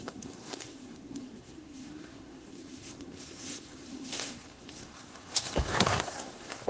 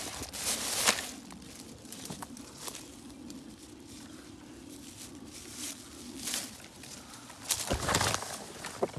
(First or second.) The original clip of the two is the second